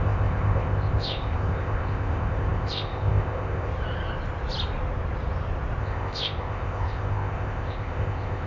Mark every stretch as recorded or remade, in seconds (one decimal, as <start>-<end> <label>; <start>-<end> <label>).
0.0-3.7 remade; 3.7-5.8 recorded; 5.8-8.5 remade